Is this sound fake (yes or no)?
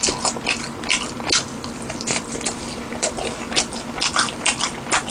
no